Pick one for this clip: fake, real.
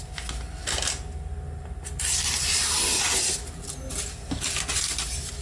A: real